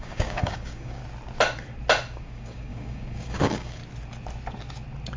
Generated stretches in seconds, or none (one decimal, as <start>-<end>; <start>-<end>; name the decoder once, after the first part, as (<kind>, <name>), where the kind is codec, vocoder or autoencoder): 0.0-1.0 (codec, DAC); 2.2-3.8

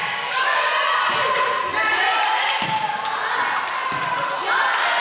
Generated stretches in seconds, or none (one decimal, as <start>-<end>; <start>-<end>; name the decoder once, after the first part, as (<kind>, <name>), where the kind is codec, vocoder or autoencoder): 0.0-0.7 (codec, DAC)

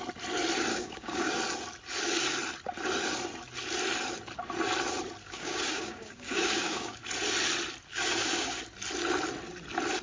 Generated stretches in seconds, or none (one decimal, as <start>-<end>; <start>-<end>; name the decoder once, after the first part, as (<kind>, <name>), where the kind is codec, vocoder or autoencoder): 0.7-1.4 (codec, DAC); 5.2-7.0; 7.9-8.6

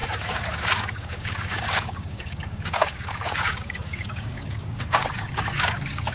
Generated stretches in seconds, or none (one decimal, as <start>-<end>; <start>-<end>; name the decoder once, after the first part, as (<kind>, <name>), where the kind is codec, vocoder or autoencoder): 0.0-6.1 (codec, DAC)

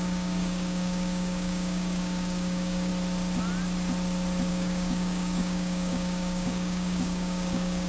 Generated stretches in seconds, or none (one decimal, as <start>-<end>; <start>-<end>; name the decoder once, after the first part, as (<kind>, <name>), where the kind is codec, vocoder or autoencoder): 0.0-2.9 (codec, DAC); 4.5-7.9